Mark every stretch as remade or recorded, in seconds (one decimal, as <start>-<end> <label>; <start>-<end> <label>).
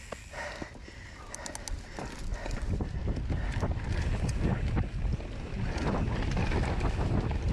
0.0-7.5 recorded